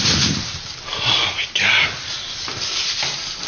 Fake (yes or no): no